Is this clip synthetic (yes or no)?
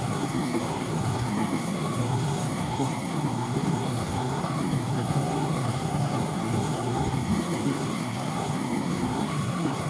yes